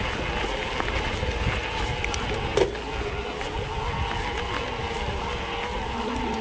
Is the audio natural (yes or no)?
yes